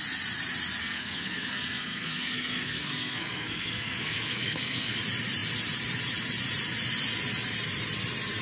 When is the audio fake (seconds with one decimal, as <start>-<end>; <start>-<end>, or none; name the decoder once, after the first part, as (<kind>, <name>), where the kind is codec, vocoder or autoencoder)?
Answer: 0.8-5.0 (codec, SNAC)